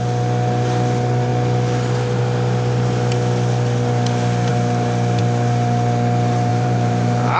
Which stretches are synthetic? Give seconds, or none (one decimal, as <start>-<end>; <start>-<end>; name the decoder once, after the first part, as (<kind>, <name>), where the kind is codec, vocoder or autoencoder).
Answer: 6.5-7.4 (vocoder, BigVGAN v2)